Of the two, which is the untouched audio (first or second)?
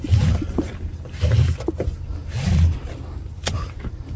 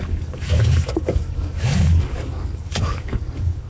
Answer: first